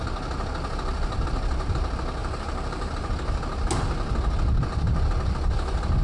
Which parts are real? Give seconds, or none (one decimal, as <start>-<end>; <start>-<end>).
0.0-2.2; 3.0-6.0